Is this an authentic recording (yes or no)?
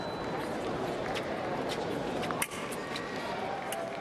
yes